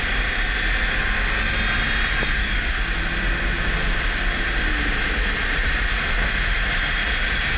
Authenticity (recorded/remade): recorded